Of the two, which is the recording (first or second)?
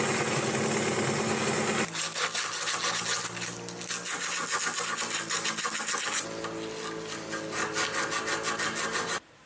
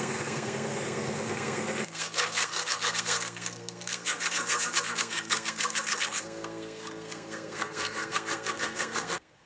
first